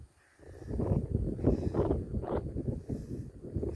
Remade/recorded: recorded